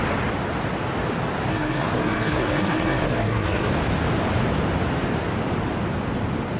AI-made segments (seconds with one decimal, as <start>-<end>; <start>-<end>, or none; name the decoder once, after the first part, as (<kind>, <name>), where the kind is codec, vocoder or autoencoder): 1.5-3.7 (codec, SNAC)